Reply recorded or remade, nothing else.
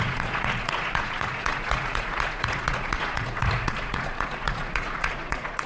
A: remade